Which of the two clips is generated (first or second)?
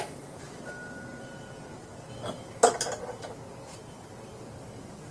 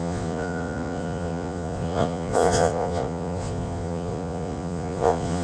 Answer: second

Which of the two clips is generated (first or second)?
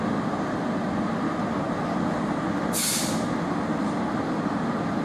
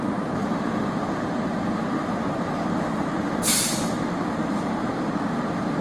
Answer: second